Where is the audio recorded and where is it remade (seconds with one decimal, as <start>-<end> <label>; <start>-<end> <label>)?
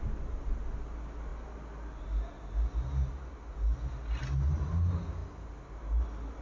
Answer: 0.0-6.4 recorded